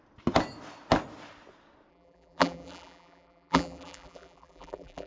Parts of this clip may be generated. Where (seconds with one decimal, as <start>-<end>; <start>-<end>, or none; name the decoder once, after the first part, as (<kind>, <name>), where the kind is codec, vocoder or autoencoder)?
1.9-5.1 (vocoder, BigVGAN v2)